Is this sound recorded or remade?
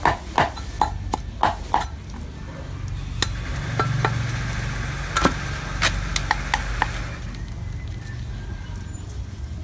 recorded